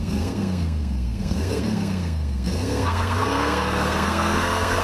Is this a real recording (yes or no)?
no